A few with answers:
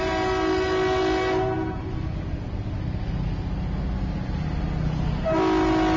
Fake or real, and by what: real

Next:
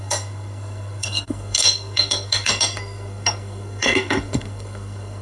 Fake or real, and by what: fake, codec, SNAC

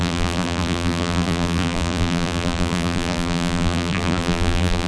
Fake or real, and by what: fake, vocoder, BigVGAN v2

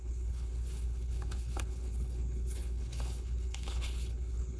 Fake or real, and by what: fake, codec, HILCodec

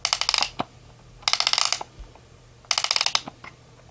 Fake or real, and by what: real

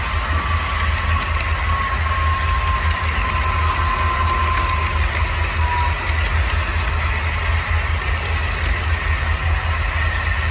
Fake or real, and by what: real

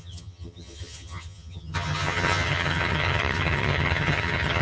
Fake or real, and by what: fake, vocoder, HiFi-GAN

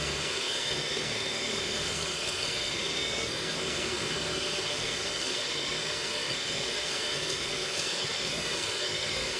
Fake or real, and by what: fake, codec, SNAC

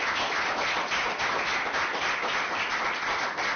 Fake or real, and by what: real